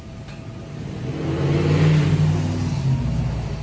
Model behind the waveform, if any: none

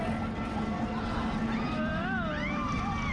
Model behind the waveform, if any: none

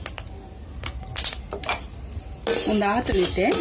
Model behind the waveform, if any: none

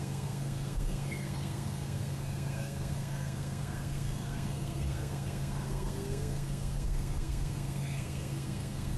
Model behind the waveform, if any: codec, SNAC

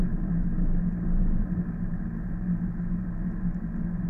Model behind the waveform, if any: none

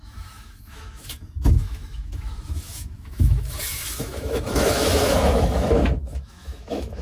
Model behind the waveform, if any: autoencoder, DAC-VAE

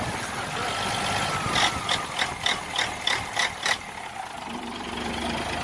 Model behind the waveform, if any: none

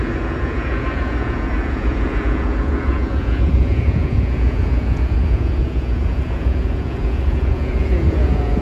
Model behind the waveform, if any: vocoder, Vocos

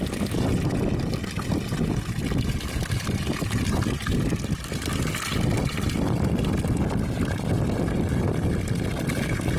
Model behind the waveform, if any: none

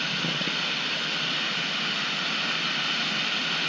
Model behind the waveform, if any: none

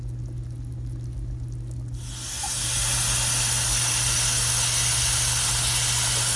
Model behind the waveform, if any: none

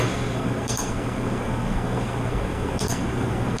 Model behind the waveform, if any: codec, SNAC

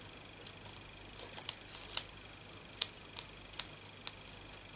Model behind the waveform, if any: none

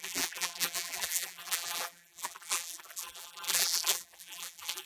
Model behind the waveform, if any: vocoder, BigVGAN v2